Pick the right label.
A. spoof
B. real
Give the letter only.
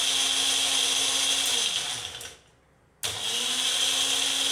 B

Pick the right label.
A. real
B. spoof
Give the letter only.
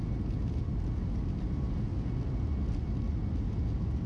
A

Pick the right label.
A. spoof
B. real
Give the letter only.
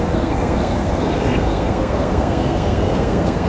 A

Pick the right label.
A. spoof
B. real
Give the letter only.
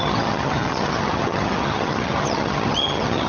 A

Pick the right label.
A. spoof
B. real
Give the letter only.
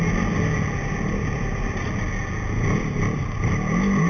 B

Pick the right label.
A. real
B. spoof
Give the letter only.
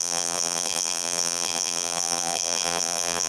B